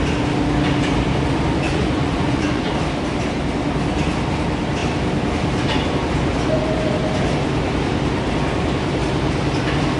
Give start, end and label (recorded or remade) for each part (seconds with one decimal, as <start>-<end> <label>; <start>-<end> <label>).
0.0-1.7 recorded; 1.7-2.6 remade; 2.6-10.0 recorded